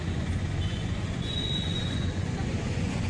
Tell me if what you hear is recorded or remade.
remade